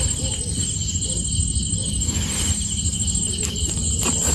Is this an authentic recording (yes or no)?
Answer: yes